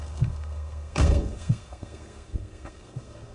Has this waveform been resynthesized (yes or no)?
yes